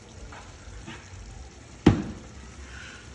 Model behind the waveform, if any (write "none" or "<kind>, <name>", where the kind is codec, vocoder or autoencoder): none